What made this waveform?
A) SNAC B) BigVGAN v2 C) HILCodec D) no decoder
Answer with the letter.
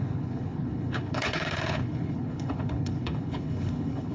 C